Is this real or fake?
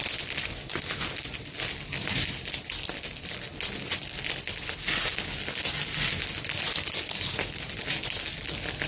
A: real